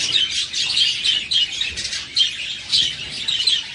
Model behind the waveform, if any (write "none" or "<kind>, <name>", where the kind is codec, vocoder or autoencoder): none